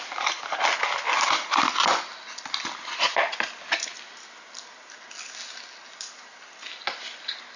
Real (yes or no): yes